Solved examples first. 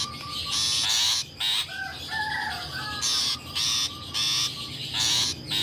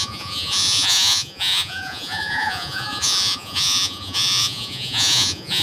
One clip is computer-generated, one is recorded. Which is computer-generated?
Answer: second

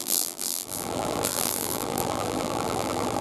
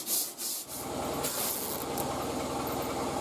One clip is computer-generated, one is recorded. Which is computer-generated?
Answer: first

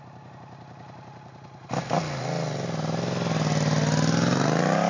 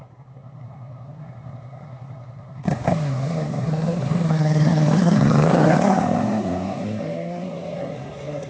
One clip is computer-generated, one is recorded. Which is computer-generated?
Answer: second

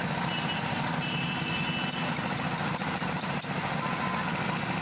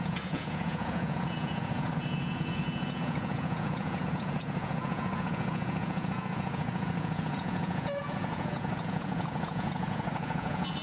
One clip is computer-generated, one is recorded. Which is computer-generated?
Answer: second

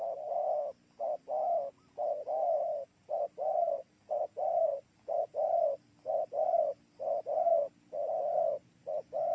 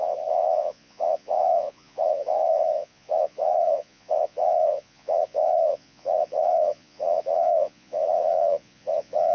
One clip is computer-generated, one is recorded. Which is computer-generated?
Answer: second